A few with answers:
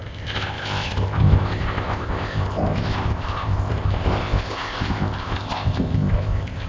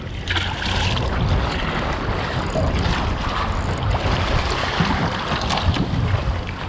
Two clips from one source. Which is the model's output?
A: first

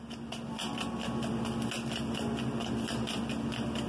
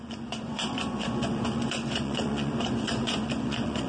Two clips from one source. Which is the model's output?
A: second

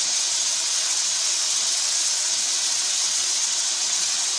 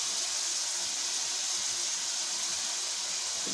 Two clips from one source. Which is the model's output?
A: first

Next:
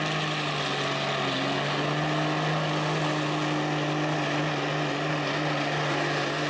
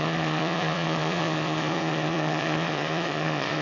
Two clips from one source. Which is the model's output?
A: second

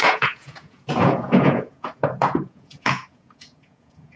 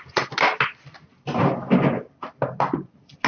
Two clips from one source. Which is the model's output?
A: first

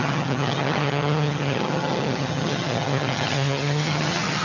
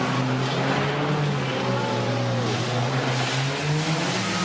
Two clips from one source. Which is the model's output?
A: first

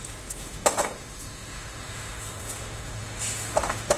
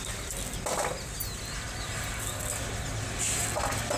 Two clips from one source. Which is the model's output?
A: first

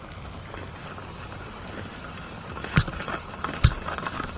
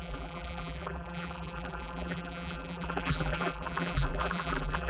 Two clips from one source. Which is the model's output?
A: second